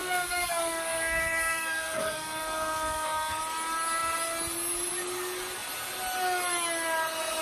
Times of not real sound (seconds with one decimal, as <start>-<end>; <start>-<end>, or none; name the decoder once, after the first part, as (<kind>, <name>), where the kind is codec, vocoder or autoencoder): 0.0-3.4 (codec, SNAC)

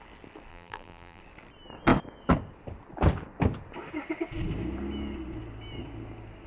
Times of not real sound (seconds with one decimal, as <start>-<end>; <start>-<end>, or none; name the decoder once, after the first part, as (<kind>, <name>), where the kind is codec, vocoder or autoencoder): 0.5-1.2 (vocoder, BigVGAN v2)

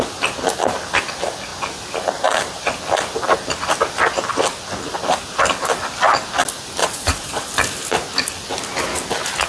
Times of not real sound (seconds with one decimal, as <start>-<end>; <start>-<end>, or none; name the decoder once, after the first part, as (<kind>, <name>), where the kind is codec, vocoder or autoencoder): 6.8-7.5 (vocoder, Vocos)

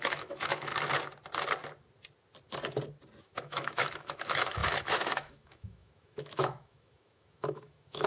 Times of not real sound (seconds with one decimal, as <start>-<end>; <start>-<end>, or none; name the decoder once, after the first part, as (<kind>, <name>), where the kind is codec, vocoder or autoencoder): 0.0-0.7 (autoencoder, DAC-VAE); 3.2-8.1